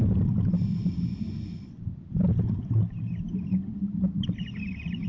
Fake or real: real